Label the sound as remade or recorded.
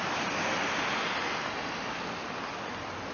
recorded